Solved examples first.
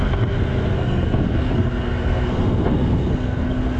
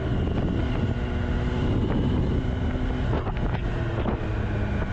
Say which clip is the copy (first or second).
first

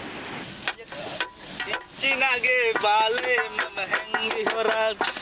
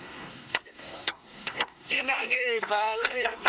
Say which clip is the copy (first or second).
second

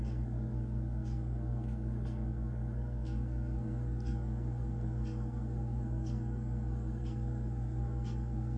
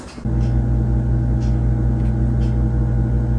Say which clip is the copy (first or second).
first